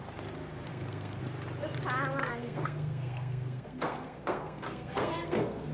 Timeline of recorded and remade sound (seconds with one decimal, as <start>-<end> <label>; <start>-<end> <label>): 0.0-0.7 recorded; 0.7-1.2 remade; 1.2-2.2 recorded; 2.2-5.7 remade